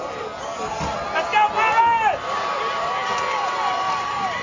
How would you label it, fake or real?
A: real